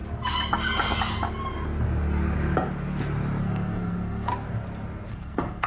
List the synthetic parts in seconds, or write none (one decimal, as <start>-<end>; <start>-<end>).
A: 3.4-4.3; 5.1-5.7